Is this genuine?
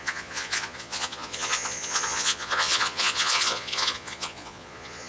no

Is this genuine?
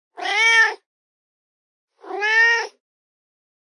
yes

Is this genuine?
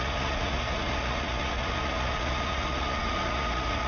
no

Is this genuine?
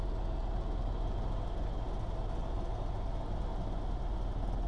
yes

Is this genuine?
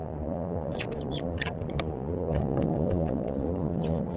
no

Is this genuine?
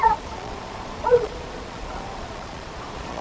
no